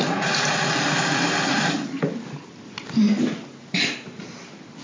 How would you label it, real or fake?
real